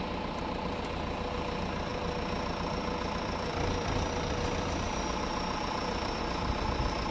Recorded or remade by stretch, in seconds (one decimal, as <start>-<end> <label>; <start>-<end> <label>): 0.0-1.9 recorded; 1.9-6.2 remade; 6.2-7.1 recorded